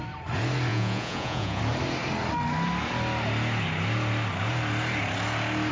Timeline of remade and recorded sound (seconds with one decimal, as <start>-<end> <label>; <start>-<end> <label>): 0.0-0.7 recorded; 0.7-1.6 remade; 1.6-5.7 recorded